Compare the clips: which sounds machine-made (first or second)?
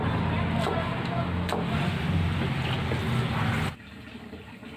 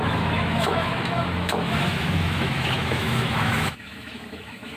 second